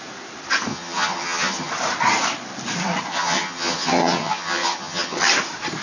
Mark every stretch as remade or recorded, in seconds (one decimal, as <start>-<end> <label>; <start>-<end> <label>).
0.0-0.7 recorded; 0.7-1.7 remade; 1.7-3.1 recorded; 3.1-5.3 remade; 5.3-5.8 recorded